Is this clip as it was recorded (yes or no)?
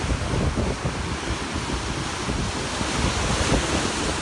yes